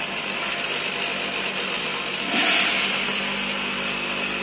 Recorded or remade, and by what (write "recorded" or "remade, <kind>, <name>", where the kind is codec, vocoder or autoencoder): recorded